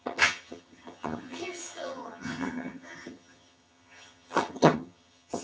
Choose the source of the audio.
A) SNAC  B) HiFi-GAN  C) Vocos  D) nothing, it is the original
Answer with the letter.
B